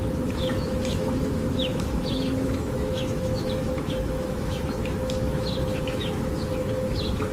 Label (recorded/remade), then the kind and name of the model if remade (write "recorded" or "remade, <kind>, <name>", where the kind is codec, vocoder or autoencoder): remade, autoencoder, DAC-VAE